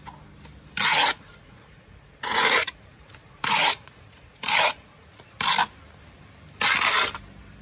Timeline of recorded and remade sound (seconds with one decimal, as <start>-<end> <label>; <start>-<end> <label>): 0.0-0.9 recorded; 0.9-5.4 remade; 5.4-7.6 recorded